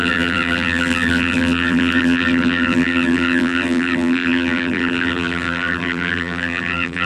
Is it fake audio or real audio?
fake